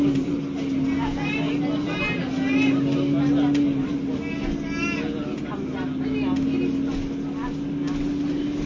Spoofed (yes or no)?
no